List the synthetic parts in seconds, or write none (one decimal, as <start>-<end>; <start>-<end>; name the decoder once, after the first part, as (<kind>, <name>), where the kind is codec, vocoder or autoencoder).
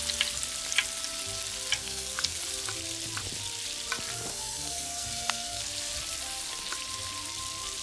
1.8-2.4 (codec, SNAC); 4.3-5.6